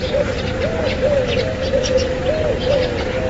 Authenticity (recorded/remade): recorded